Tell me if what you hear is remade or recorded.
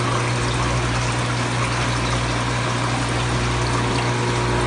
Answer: recorded